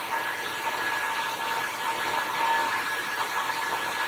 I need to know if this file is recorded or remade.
recorded